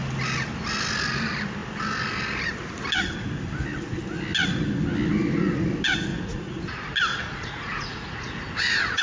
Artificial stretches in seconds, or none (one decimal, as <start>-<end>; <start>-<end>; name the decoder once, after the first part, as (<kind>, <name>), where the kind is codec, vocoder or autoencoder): 6.1-6.6 (vocoder, Vocos); 7.1-9.0